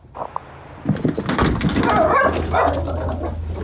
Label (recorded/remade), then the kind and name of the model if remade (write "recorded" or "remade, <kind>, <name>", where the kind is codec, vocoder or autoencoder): recorded